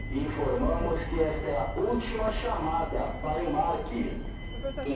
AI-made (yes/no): no